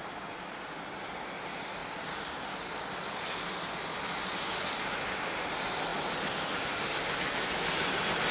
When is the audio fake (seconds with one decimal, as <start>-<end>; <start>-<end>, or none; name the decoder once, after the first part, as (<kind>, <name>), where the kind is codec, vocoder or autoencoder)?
none